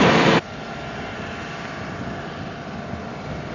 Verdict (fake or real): real